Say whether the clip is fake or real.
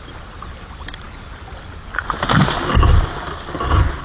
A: real